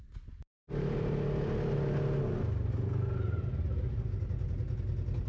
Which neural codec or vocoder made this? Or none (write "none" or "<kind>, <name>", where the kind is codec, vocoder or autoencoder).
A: none